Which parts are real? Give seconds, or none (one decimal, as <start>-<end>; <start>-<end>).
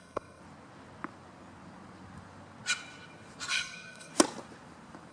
0.4-3.5; 4.1-5.1